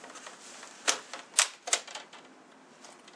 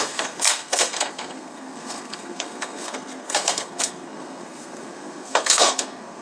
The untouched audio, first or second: first